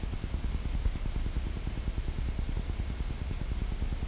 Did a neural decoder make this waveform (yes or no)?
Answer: no